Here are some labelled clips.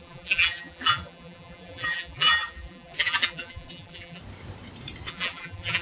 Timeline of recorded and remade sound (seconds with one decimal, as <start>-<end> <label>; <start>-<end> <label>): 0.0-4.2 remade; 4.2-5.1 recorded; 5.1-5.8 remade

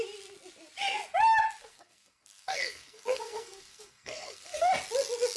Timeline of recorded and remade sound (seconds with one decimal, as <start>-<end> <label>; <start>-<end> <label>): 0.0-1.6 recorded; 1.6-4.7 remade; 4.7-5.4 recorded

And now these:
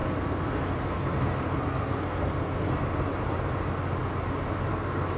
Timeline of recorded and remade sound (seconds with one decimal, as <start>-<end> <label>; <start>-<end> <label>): 0.0-3.1 remade; 3.1-4.7 recorded; 4.7-5.2 remade

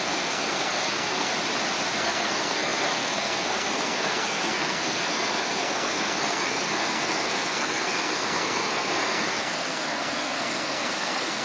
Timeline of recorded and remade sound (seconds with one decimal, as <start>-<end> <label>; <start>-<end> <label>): 0.0-1.3 remade; 1.3-1.9 recorded; 1.9-11.4 remade